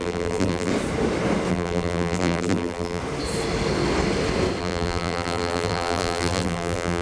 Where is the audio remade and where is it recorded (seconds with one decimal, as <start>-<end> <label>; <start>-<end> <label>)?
0.0-0.7 remade; 0.7-1.5 recorded; 1.5-3.0 remade; 3.0-4.6 recorded; 4.6-7.0 remade